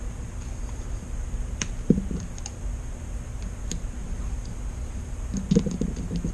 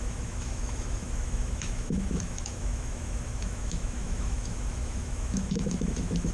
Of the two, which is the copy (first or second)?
second